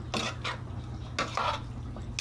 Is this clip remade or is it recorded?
recorded